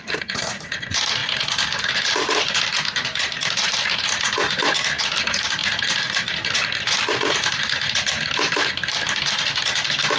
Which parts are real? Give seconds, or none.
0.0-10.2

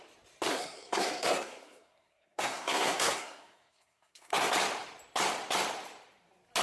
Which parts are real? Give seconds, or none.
0.0-0.5; 4.5-6.6

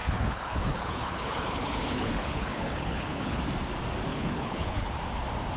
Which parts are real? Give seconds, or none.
3.4-4.1; 4.9-5.6

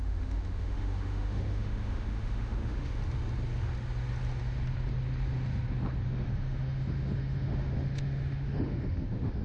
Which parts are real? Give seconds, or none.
3.0-6.0

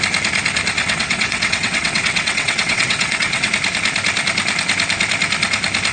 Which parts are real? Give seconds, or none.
0.0-0.8; 3.5-5.9

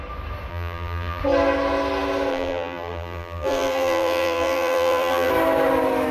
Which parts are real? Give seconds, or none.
0.0-0.5; 1.2-2.3; 5.3-6.1

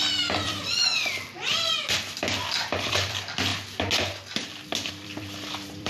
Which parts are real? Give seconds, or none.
3.5-4.9